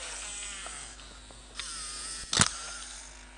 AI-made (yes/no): no